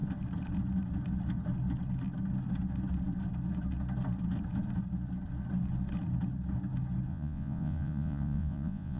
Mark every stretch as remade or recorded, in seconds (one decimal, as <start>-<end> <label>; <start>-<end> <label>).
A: 0.0-7.1 recorded; 7.1-9.0 remade